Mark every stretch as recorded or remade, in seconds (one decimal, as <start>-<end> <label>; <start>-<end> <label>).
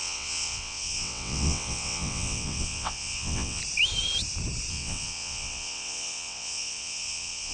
0.0-3.6 remade; 3.6-4.7 recorded; 4.7-7.5 remade